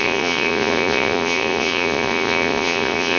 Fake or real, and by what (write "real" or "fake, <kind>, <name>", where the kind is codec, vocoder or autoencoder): fake, vocoder, Vocos